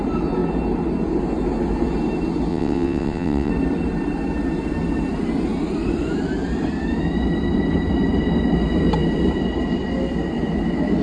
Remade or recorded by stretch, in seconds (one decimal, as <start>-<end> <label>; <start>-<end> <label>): 0.0-2.5 recorded; 2.5-3.5 remade; 3.5-11.0 recorded

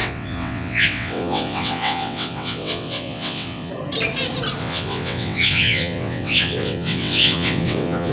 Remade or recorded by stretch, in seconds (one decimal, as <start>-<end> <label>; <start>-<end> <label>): 0.0-3.7 remade; 3.7-4.6 recorded; 4.6-8.1 remade

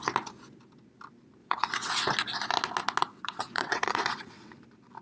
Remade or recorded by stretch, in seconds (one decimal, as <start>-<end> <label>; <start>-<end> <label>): 0.0-1.4 recorded; 1.4-1.9 remade; 1.9-3.1 recorded; 3.1-4.5 remade; 4.5-5.0 recorded

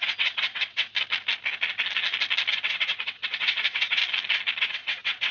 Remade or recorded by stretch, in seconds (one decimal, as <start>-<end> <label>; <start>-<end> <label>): 0.0-0.9 remade; 0.9-2.5 recorded; 2.5-4.0 remade; 4.0-4.6 recorded; 4.6-5.3 remade

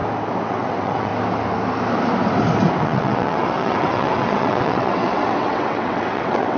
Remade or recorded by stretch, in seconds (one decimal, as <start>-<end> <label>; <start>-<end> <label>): 0.0-0.5 recorded; 0.5-1.1 remade; 1.1-2.8 recorded; 2.8-6.6 remade

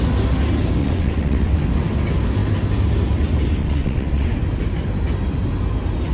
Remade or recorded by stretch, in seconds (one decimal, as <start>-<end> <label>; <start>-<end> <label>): 0.0-0.8 recorded; 0.8-1.6 remade; 1.6-3.6 recorded; 3.6-4.3 remade; 4.3-6.1 recorded